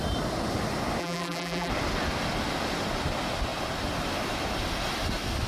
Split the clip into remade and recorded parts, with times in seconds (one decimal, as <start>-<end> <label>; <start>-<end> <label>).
0.0-1.0 recorded; 1.0-1.7 remade; 1.7-5.5 recorded

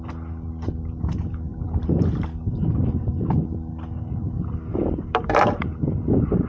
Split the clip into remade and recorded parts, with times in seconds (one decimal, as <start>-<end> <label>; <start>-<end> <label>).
0.0-4.7 recorded; 4.7-5.6 remade; 5.6-6.5 recorded